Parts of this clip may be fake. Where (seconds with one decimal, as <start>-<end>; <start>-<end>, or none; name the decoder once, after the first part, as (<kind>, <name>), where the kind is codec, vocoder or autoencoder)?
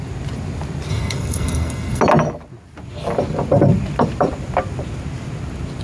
0.9-2.0 (codec, SNAC)